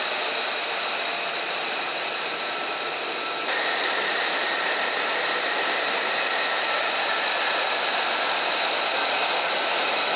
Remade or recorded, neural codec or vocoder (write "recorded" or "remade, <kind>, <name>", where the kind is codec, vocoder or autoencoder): recorded